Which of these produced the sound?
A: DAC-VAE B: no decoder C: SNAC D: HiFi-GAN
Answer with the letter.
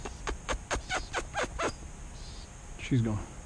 B